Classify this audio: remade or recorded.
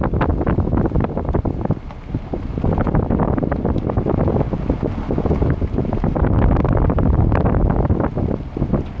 recorded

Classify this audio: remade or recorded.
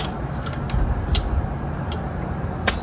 recorded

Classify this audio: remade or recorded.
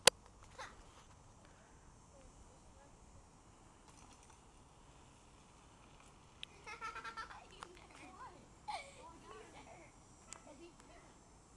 recorded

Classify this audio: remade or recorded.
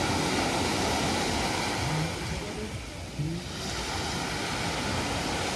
recorded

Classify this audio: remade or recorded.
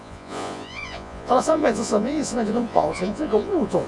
remade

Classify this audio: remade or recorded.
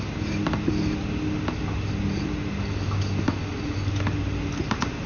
recorded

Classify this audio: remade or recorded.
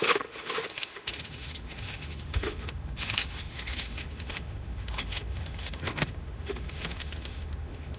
remade